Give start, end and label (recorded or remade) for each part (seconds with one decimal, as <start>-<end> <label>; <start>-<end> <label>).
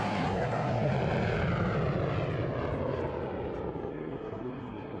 0.0-0.9 remade; 0.9-3.9 recorded; 3.9-5.0 remade